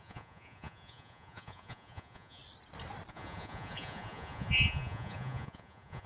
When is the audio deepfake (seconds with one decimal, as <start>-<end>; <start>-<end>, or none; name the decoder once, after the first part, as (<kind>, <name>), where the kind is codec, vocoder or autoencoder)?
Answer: 0.0-2.4 (vocoder, Vocos); 3.1-6.1